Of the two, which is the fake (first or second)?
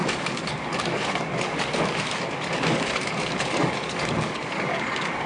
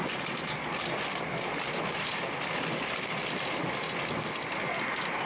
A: first